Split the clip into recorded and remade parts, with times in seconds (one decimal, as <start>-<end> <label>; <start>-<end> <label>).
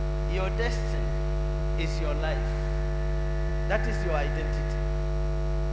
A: 0.0-5.7 recorded